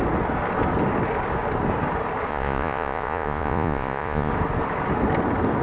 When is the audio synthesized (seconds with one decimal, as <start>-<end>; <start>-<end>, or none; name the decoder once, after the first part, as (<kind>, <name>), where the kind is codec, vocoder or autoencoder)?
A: 2.3-4.3 (vocoder, Vocos)